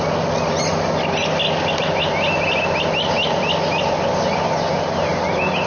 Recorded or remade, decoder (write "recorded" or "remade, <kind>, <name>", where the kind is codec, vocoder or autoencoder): recorded